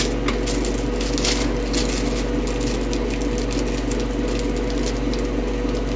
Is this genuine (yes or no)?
yes